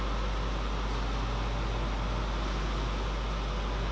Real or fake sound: real